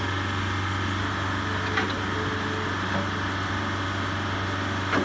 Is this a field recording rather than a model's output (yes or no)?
yes